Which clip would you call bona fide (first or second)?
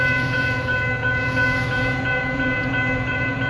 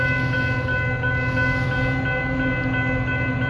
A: second